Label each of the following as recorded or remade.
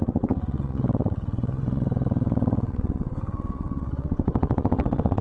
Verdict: remade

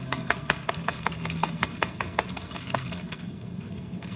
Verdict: remade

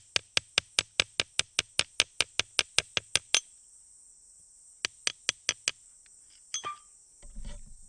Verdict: recorded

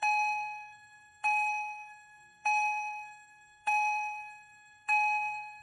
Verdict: remade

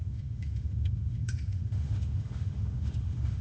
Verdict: remade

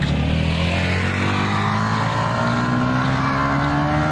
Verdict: recorded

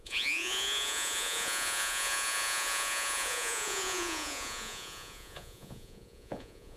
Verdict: remade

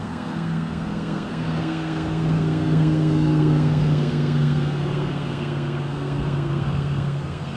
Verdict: remade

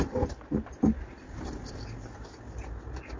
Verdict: recorded